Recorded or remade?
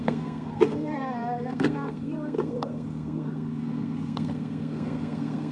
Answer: remade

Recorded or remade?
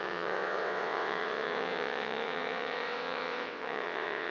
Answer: remade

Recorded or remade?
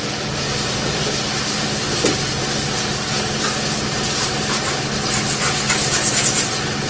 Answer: recorded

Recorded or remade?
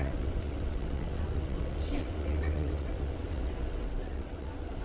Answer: remade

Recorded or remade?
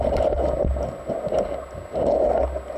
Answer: recorded